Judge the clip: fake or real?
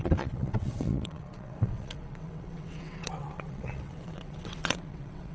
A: fake